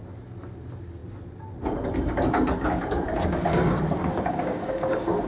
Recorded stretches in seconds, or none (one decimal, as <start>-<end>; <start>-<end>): 0.0-4.1

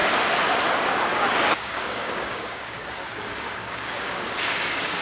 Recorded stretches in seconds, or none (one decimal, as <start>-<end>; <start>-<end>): 0.0-0.7

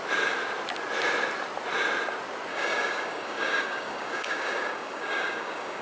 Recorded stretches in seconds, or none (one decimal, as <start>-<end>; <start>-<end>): 0.0-2.5

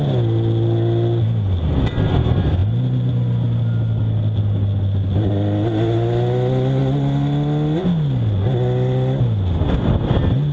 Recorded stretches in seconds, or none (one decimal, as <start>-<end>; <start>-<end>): 0.0-10.5

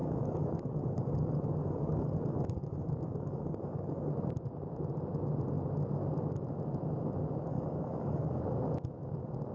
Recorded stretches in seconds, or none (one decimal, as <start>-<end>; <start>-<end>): 4.1-7.5; 8.4-9.5

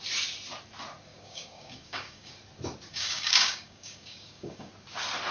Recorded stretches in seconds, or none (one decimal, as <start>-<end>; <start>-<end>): 0.0-1.1; 2.3-2.9; 4.7-5.3

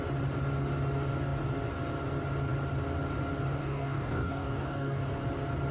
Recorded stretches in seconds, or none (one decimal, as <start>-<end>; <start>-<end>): 0.0-3.6; 5.0-5.7

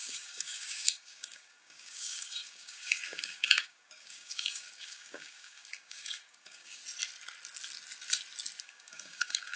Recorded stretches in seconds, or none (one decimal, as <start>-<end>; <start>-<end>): 6.8-8.6